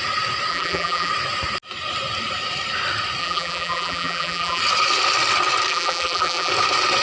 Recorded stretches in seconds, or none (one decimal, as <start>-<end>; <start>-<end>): 0.0-0.5; 1.1-3.2; 4.6-5.7; 6.5-7.0